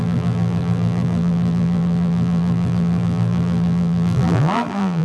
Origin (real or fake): fake